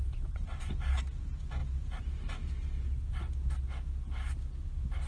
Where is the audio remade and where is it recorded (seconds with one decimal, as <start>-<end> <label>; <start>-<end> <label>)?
0.0-0.6 remade; 0.6-5.1 recorded